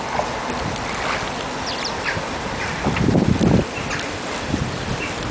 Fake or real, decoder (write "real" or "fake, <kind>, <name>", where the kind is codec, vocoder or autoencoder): real